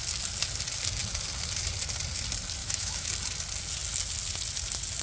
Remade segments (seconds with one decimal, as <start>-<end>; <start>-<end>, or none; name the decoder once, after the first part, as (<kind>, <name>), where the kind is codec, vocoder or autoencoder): 2.6-3.1 (autoencoder, DAC-VAE)